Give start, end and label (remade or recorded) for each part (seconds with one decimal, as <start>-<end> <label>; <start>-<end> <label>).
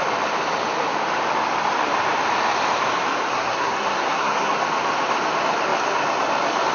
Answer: 0.0-3.3 recorded; 3.3-4.5 remade; 4.5-6.7 recorded